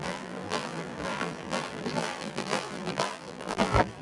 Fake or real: fake